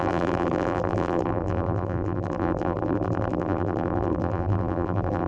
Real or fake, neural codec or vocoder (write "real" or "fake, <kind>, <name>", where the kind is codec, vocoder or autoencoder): fake, vocoder, BigVGAN v2